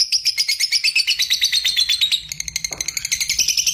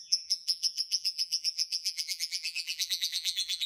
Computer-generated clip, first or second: second